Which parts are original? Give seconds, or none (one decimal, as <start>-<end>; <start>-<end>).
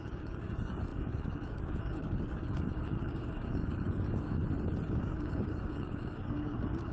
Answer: 4.4-4.9